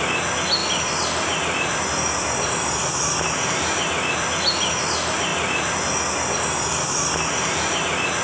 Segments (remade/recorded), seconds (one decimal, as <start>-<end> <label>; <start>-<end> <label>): 0.0-0.6 recorded; 0.6-2.8 remade; 2.8-5.3 recorded; 5.3-5.9 remade; 5.9-8.2 recorded